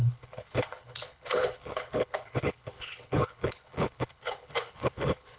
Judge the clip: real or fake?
fake